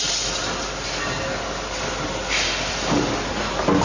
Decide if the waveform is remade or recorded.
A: recorded